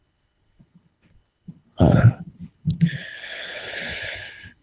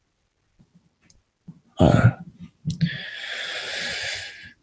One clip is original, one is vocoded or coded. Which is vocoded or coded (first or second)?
first